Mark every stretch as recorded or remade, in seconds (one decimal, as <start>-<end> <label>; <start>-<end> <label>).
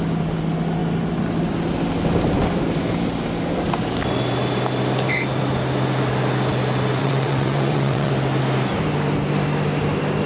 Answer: 0.0-7.0 recorded; 7.0-8.1 remade; 8.1-10.3 recorded